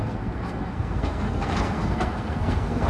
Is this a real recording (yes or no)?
no